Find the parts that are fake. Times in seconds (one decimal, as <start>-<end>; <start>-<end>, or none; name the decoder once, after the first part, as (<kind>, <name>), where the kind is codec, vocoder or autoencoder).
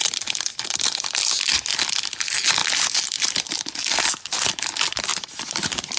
2.6-4.0 (vocoder, BigVGAN v2); 5.1-6.0